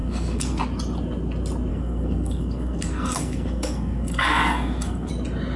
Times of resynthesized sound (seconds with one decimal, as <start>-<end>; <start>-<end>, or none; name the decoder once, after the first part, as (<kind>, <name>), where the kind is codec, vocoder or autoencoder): 0.0-0.6 (codec, SNAC); 1.7-5.1